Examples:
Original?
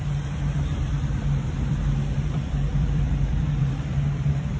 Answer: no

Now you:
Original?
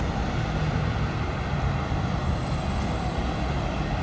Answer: yes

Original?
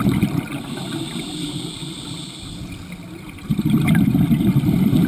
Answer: no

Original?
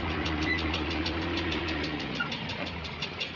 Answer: no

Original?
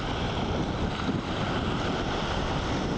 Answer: yes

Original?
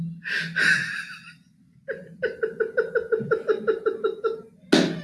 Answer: yes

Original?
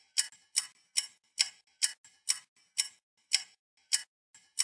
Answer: yes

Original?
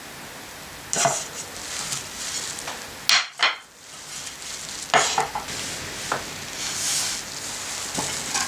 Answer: yes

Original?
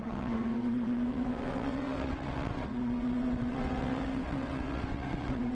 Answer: no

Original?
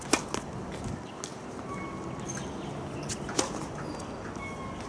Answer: yes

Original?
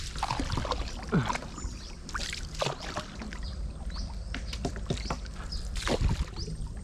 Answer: yes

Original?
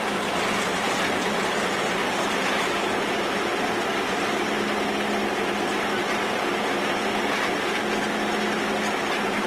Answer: yes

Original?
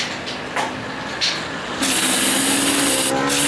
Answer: yes